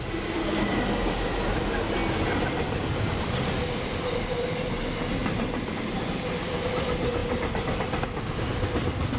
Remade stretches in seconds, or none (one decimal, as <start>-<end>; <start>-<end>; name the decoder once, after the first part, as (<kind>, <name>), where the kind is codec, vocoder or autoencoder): 5.2-5.9 (vocoder, BigVGAN v2)